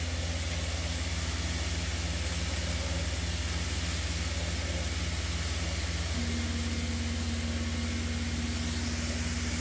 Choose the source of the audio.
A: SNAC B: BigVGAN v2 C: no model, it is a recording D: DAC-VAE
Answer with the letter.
C